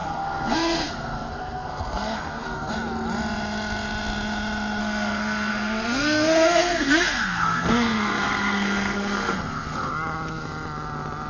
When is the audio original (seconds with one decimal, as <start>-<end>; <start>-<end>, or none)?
2.7-4.8; 9.9-11.3